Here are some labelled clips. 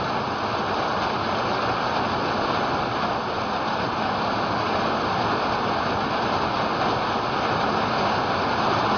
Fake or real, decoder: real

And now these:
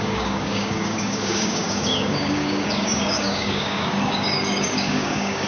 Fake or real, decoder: fake, codec, DAC